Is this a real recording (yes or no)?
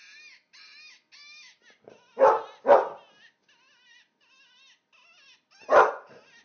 yes